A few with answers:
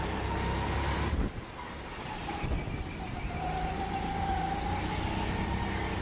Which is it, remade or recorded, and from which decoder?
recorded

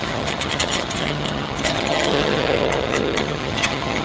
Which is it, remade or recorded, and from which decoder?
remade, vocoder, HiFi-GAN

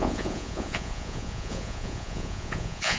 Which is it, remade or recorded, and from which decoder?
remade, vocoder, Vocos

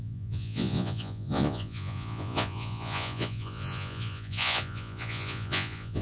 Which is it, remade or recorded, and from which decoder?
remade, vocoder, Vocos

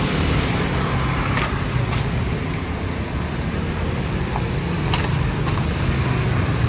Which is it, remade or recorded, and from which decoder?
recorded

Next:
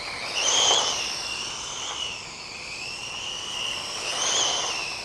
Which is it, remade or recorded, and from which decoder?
remade, vocoder, BigVGAN v2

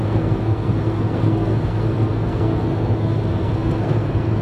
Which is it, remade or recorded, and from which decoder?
remade, codec, SNAC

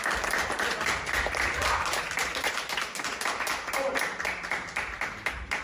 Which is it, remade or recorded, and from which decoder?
recorded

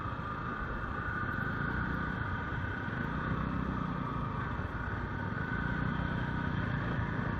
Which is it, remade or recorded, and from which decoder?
recorded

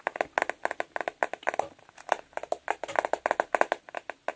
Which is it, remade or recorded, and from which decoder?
recorded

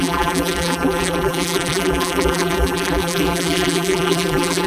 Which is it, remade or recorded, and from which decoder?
remade, vocoder, BigVGAN v2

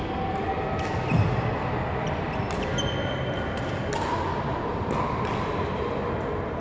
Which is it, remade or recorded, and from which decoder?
recorded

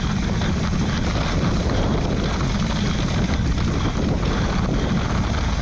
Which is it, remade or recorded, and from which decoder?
recorded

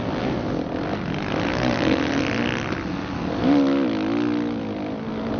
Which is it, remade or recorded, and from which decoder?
recorded